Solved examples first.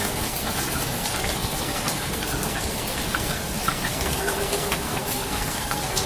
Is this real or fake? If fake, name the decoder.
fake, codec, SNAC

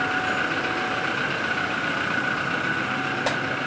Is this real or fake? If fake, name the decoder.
real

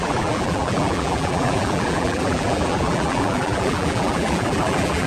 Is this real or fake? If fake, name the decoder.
fake, vocoder, BigVGAN v2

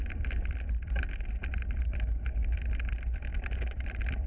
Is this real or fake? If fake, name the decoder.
real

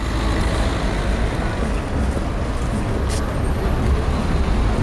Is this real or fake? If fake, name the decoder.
real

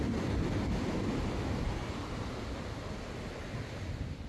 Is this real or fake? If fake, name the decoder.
real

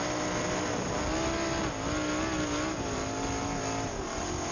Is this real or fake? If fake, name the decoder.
real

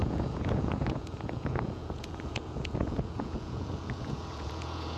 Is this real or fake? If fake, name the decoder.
fake, vocoder, Vocos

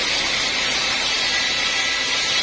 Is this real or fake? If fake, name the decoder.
real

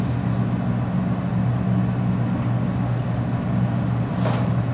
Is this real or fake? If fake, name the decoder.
real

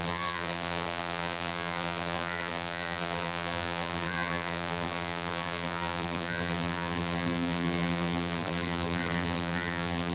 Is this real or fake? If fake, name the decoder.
fake, vocoder, BigVGAN v2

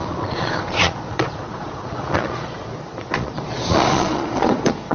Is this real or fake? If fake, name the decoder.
fake, vocoder, Vocos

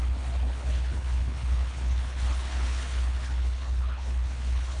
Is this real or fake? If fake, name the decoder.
fake, codec, HILCodec